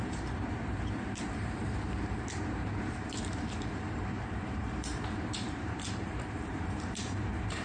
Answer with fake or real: fake